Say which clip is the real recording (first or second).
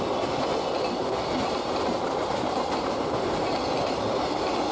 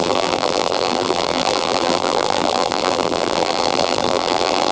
first